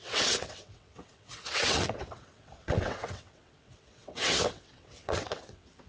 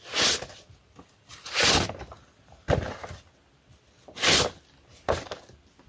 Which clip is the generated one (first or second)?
first